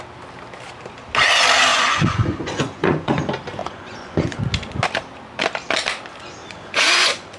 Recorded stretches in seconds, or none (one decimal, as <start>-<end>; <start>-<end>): 0.0-1.7; 3.2-3.6; 4.4-6.4